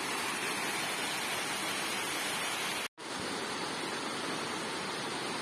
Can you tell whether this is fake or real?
real